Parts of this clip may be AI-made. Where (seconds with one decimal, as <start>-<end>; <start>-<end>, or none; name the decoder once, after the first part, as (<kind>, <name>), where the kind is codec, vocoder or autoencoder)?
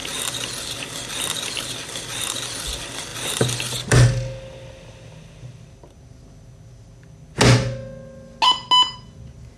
none